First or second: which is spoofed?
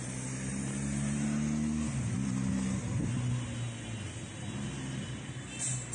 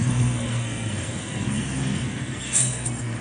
second